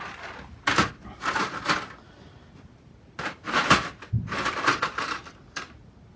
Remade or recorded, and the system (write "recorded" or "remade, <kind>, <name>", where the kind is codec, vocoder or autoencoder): remade, vocoder, BigVGAN v2